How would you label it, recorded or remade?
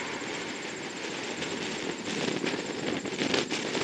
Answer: recorded